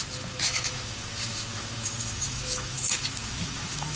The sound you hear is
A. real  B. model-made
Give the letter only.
B